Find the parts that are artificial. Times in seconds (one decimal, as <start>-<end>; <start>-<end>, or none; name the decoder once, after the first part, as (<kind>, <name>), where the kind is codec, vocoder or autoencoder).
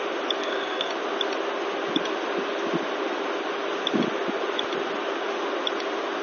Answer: 0.4-0.9 (codec, SNAC)